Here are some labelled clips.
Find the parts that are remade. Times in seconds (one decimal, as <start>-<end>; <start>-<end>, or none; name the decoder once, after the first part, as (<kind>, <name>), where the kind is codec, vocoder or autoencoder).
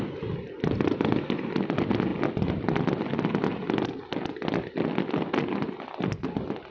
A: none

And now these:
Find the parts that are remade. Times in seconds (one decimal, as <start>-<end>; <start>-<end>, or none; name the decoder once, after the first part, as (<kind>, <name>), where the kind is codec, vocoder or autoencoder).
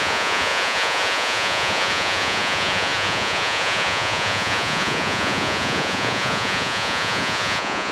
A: 0.0-7.9 (vocoder, Vocos)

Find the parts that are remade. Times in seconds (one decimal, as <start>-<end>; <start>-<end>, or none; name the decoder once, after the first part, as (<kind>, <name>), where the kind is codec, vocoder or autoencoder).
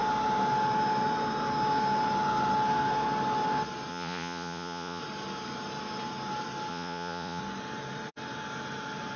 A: 3.9-5.0 (vocoder, Vocos); 6.7-7.4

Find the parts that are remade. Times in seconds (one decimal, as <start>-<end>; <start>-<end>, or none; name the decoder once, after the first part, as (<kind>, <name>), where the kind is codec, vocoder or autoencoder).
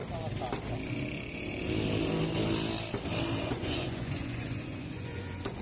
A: 3.4-5.6 (vocoder, Vocos)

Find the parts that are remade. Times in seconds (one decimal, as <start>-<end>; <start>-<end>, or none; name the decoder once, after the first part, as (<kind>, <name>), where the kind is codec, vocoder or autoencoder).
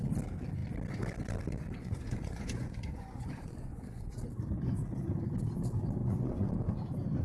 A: 1.8-4.1 (vocoder, Vocos); 6.0-6.5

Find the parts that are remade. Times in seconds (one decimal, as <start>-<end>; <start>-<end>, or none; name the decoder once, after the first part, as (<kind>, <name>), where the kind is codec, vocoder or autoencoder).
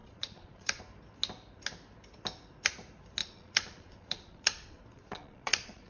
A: 0.0-0.8 (vocoder, Vocos); 3.2-5.9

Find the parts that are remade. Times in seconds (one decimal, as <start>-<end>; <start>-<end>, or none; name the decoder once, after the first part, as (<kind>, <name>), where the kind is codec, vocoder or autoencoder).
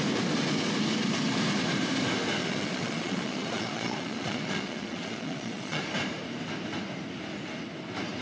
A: 2.4-5.8 (vocoder, Vocos)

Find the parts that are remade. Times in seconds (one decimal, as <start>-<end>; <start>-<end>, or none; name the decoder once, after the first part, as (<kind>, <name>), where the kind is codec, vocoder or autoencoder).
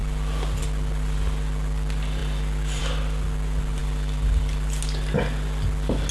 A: none